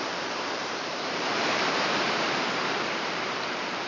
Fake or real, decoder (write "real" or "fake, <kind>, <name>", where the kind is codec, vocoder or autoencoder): fake, vocoder, BigVGAN v2